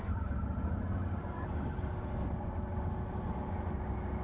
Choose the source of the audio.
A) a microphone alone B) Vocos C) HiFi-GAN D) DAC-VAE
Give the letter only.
A